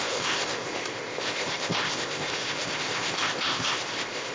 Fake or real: fake